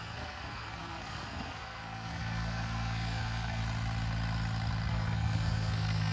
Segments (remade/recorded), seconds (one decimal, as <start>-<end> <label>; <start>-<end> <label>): 0.0-3.6 remade; 3.6-4.9 recorded; 4.9-6.1 remade